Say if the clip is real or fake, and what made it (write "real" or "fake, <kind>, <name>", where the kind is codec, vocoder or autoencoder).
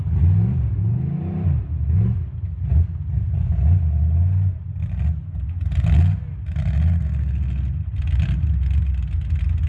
real